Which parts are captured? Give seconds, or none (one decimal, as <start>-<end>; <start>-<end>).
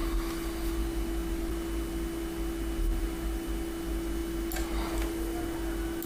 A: 0.0-6.1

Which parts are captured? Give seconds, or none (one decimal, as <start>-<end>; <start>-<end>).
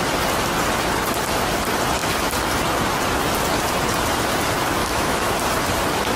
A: 0.0-4.8; 5.3-6.2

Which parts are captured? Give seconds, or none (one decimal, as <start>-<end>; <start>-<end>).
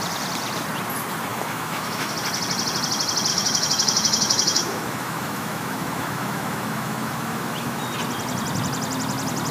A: 0.0-1.3; 2.1-3.3; 7.8-9.5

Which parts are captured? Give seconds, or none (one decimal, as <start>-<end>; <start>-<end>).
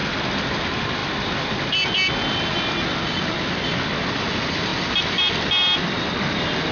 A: 0.0-6.7